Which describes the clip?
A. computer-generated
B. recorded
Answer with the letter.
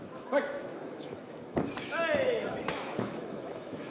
A